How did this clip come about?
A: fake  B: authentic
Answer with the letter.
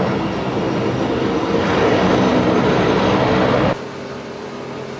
B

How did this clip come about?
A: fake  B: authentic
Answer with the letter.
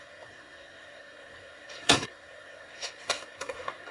A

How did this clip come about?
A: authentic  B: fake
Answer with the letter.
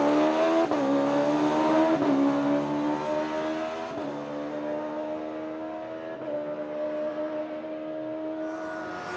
A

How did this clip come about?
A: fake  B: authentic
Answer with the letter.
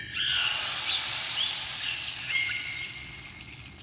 B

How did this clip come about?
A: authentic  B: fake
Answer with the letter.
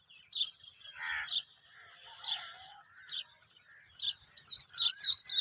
A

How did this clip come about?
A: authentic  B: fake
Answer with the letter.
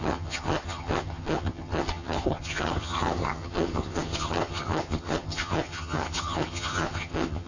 B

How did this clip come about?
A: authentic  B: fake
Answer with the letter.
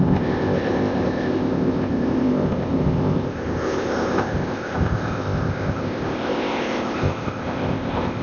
B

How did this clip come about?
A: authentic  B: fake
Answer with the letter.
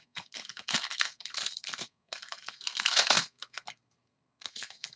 B